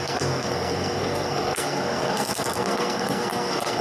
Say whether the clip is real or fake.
fake